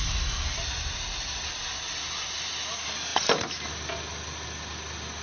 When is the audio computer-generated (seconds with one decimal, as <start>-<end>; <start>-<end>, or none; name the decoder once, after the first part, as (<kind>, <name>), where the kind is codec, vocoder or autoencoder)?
none